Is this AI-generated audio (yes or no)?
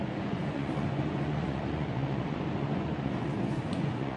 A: yes